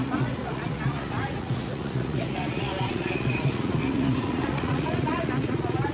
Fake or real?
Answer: fake